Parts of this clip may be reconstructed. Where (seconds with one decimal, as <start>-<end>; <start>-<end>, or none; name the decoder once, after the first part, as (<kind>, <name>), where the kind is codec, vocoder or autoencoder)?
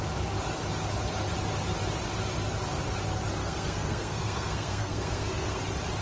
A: 3.4-5.6 (codec, SNAC)